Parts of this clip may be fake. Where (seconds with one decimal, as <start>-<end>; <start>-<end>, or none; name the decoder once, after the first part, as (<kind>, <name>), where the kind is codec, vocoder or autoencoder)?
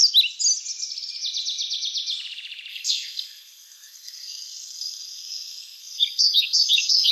2.7-7.1 (codec, SNAC)